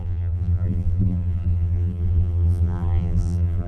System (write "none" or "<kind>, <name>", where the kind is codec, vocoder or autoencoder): vocoder, BigVGAN v2